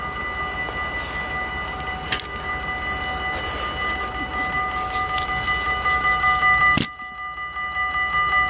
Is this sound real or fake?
real